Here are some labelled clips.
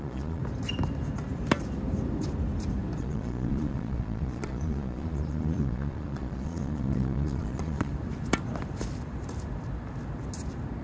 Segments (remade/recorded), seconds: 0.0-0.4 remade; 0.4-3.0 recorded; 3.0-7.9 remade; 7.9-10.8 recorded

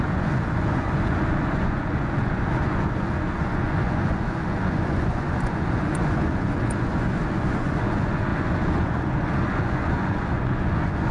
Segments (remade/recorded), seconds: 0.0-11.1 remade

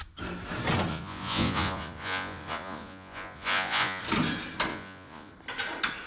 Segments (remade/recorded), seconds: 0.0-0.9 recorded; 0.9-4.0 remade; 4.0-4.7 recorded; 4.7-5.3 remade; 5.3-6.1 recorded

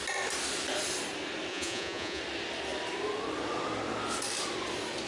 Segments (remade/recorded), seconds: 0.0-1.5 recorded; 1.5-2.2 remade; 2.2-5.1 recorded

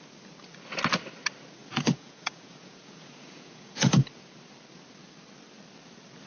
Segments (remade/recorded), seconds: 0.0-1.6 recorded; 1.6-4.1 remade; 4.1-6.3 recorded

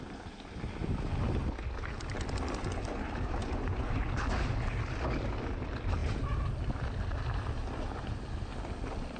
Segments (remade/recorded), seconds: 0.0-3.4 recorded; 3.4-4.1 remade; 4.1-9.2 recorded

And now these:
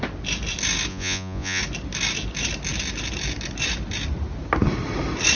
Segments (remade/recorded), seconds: 0.0-0.9 recorded; 0.9-1.6 remade; 1.6-5.3 recorded

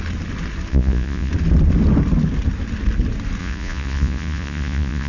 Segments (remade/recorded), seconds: 0.0-0.7 recorded; 0.7-1.3 remade; 1.3-3.4 recorded; 3.4-5.1 remade